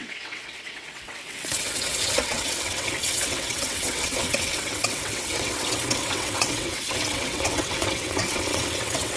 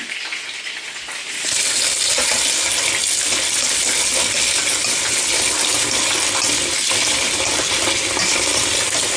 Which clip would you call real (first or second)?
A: second